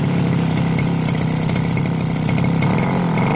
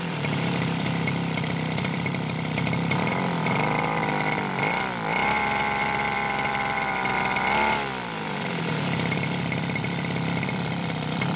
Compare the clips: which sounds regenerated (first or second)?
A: second